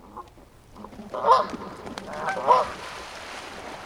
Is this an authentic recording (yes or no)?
yes